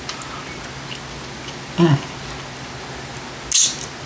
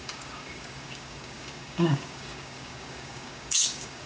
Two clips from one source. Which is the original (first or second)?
first